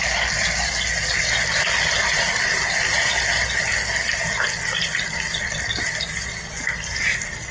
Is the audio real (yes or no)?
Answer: yes